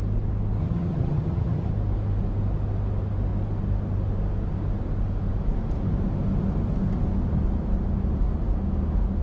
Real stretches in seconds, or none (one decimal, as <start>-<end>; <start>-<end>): 0.0-0.6; 1.7-9.2